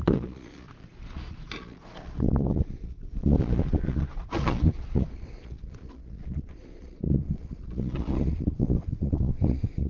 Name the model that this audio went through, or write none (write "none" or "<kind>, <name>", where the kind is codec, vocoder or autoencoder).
vocoder, Vocos